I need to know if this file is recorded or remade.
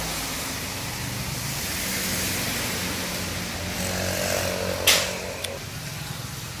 recorded